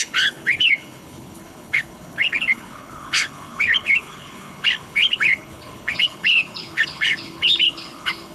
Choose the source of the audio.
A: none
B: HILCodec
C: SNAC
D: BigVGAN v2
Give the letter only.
B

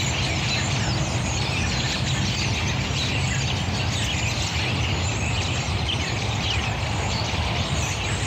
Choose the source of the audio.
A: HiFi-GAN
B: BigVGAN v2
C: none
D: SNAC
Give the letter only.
C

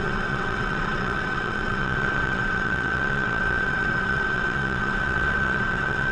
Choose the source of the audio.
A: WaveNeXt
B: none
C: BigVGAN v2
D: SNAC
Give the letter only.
A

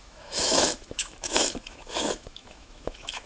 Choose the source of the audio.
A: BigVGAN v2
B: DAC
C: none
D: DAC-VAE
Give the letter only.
D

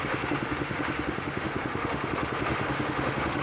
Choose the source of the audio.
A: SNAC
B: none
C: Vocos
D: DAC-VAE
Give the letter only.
D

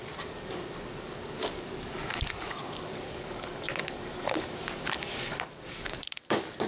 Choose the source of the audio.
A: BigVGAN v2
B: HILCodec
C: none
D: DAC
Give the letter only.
D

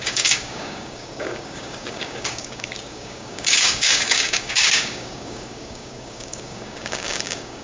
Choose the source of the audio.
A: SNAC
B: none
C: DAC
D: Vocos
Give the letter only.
C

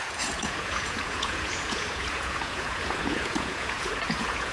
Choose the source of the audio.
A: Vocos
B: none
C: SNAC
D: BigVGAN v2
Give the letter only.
A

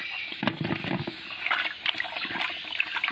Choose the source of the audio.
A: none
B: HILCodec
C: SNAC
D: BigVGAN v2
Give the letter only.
A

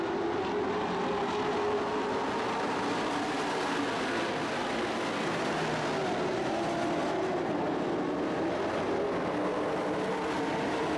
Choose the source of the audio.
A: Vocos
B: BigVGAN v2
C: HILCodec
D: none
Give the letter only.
D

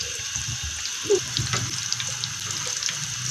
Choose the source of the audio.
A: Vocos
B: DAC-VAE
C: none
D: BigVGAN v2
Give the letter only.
C